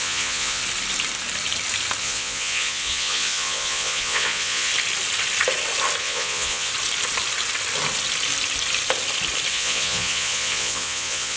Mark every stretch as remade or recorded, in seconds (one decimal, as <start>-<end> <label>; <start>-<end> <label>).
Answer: 0.0-0.6 remade; 0.6-2.0 recorded; 2.0-4.7 remade; 4.7-6.0 recorded; 6.0-6.7 remade; 6.7-9.5 recorded; 9.5-11.4 remade